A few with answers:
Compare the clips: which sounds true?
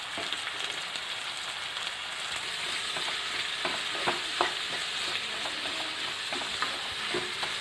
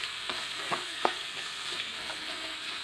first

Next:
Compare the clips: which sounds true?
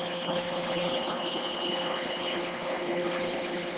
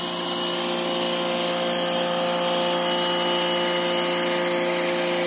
second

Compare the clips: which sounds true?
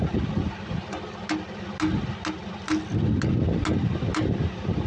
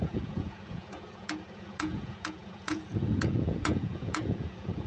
first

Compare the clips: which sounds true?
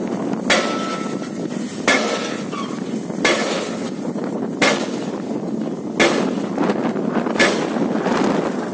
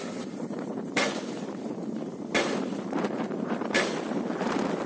first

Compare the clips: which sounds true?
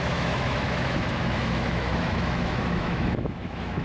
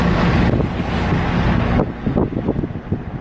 second